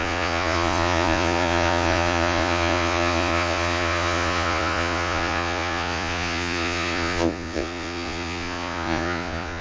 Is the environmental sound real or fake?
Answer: fake